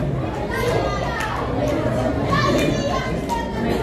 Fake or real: real